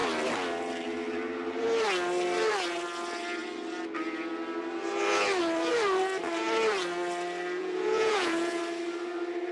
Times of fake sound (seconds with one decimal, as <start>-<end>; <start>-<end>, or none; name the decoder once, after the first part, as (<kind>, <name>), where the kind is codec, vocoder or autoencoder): 7.6-8.6 (vocoder, Vocos)